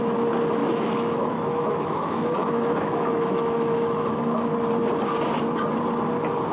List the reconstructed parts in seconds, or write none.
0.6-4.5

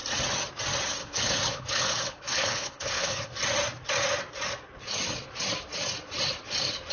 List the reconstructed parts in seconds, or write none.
1.0-3.3

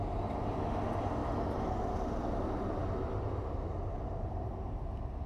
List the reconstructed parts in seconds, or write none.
none